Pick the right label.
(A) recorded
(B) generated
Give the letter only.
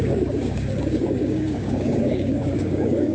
B